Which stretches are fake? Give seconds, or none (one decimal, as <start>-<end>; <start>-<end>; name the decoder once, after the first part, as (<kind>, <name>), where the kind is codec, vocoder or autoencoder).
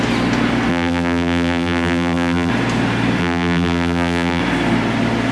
0.7-2.5 (vocoder, BigVGAN v2); 3.2-4.4